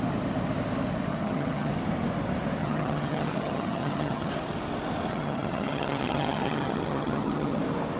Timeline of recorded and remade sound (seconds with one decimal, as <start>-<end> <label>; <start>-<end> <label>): 0.0-1.1 recorded; 1.1-1.7 remade; 1.7-2.6 recorded; 2.6-4.3 remade; 4.3-5.1 recorded; 5.1-7.6 remade; 7.6-8.0 recorded